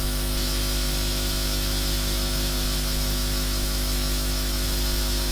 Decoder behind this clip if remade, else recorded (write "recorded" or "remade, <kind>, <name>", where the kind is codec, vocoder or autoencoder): remade, autoencoder, DAC-VAE